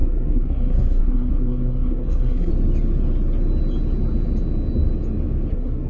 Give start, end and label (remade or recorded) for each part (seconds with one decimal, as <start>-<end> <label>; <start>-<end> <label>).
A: 0.0-2.5 remade; 2.5-5.5 recorded; 5.5-5.9 remade